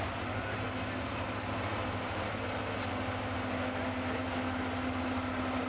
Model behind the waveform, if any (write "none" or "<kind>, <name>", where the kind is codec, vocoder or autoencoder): none